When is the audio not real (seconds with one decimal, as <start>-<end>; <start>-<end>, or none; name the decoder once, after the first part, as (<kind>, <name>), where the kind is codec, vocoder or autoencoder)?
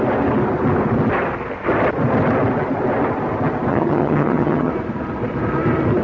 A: 3.7-4.7 (vocoder, HiFi-GAN)